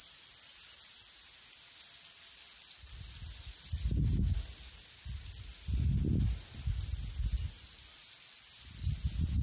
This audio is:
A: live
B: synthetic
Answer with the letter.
A